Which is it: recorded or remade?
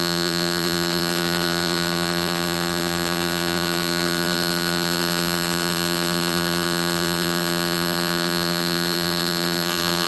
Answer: remade